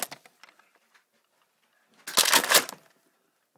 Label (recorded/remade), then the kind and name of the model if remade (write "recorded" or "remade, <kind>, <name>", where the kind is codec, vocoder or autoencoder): recorded